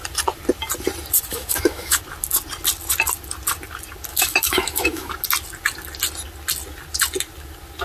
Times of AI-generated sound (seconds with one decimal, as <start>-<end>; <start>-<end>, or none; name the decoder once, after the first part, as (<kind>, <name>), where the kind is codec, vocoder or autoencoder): 1.3-2.0 (autoencoder, DAC-VAE); 4.1-5.1